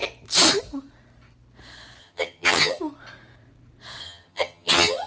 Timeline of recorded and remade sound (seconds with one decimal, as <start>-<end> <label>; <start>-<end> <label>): 0.0-2.0 recorded; 2.0-2.8 remade; 2.8-4.0 recorded; 4.0-5.1 remade